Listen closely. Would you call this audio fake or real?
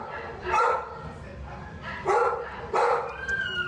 real